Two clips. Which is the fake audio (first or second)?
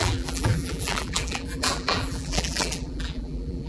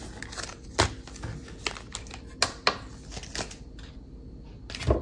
first